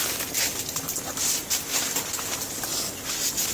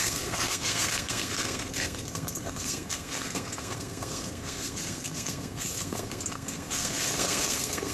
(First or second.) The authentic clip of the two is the first